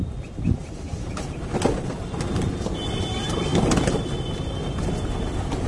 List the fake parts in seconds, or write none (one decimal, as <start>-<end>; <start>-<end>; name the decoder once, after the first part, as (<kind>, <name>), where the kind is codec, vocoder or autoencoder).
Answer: none